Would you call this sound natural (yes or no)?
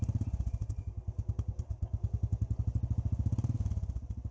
yes